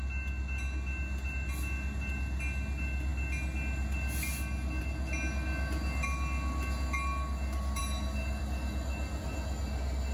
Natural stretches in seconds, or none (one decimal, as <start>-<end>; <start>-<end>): 0.0-10.1